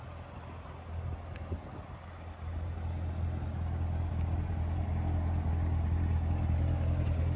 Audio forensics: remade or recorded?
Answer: recorded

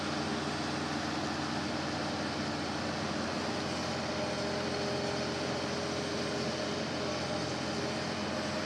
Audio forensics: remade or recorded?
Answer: recorded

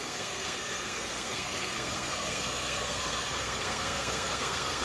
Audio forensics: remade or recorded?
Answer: remade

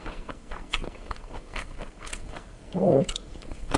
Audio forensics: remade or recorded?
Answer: remade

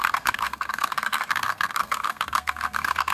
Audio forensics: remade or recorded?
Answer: remade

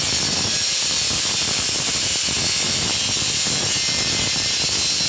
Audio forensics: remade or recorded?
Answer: recorded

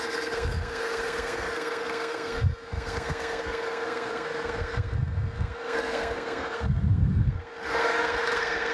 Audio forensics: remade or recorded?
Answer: remade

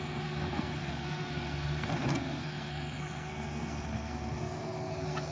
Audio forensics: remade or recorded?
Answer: remade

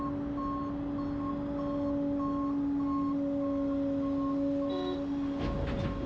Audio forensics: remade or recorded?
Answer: recorded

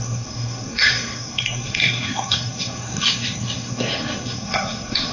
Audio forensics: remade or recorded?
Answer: remade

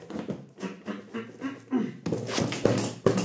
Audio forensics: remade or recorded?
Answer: recorded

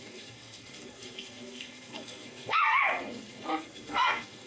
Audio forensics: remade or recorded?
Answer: remade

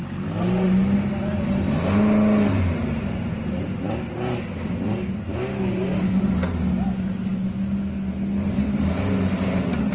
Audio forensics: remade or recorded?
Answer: recorded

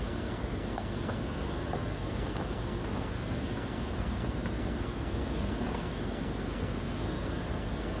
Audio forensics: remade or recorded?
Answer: remade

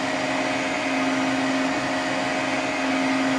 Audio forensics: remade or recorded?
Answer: recorded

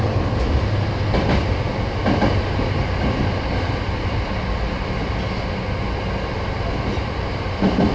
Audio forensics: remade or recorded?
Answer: recorded